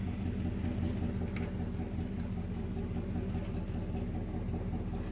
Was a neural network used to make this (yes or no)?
no